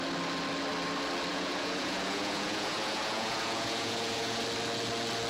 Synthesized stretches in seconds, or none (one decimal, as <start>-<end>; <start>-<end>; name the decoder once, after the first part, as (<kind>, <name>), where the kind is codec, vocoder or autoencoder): 1.3-4.4 (vocoder, Vocos)